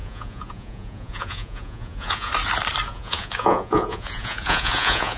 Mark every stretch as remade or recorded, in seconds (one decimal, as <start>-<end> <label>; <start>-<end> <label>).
0.0-2.3 remade; 2.3-2.9 recorded; 2.9-5.2 remade